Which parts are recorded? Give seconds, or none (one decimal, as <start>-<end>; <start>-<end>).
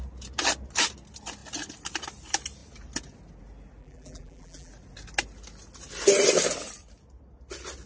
0.0-3.8; 4.7-7.9